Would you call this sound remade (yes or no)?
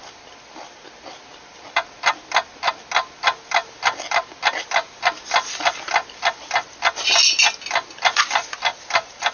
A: no